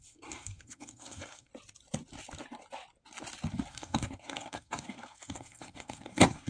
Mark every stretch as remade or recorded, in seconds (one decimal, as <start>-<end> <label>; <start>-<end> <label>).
0.0-1.5 remade; 1.5-3.7 recorded; 3.7-6.5 remade